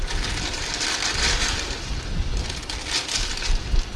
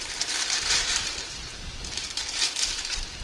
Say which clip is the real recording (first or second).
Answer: first